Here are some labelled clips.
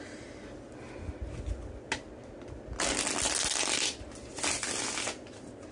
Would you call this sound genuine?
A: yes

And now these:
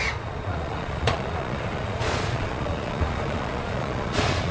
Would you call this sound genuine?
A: no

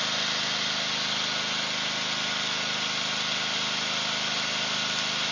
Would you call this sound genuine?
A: yes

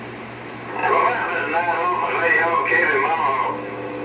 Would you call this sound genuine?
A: yes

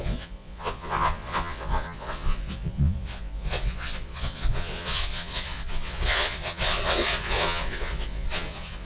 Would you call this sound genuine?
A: no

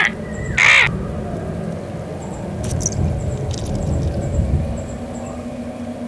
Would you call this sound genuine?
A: yes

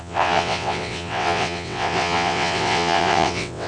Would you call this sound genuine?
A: no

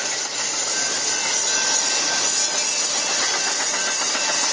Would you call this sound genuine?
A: yes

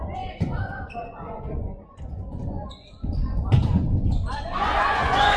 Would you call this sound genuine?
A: no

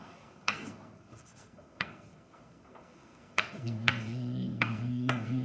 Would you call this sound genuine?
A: no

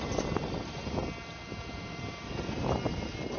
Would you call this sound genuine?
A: yes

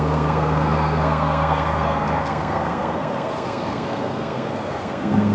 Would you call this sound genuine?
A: no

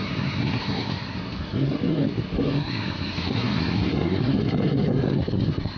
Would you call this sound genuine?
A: no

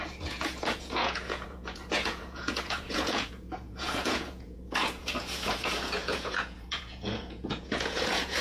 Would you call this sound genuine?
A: no